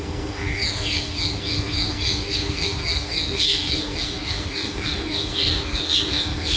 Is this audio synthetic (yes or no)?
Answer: yes